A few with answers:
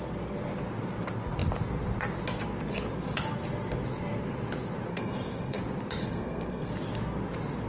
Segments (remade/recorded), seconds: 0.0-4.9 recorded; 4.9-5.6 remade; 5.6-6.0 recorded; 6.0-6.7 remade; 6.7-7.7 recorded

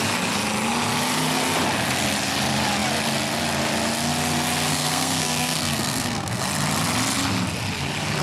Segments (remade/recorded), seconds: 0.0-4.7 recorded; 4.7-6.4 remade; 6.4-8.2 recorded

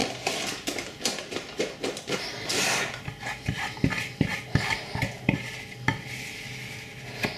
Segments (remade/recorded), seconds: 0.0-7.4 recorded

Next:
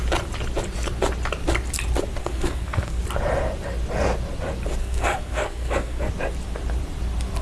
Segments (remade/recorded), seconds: 0.0-2.2 recorded; 2.2-3.0 remade; 3.0-4.8 recorded; 4.8-6.1 remade; 6.1-7.4 recorded

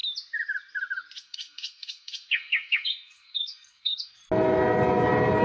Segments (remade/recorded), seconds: 0.0-1.2 recorded; 1.2-4.2 remade; 4.2-5.4 recorded

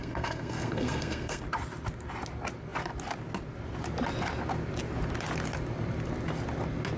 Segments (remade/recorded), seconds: 0.0-1.4 remade; 1.4-7.0 recorded

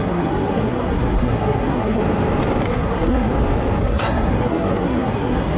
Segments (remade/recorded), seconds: 0.0-2.0 remade; 2.0-2.6 recorded; 2.6-3.3 remade; 3.3-3.8 recorded; 3.8-5.6 remade